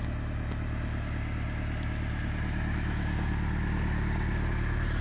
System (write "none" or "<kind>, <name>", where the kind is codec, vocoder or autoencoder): none